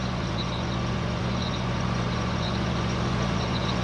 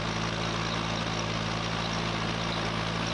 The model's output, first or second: first